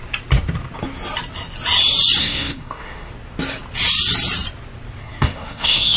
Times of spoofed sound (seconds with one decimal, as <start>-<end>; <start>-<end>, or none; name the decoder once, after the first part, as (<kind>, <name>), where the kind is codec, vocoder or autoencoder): 2.2-3.1 (codec, SNAC); 5.0-6.0